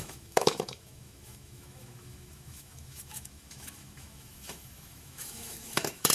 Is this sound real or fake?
fake